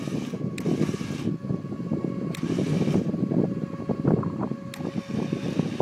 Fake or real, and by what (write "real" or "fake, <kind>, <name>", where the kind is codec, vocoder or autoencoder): real